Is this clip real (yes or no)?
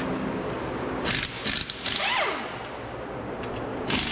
yes